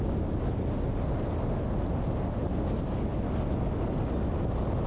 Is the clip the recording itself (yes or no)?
yes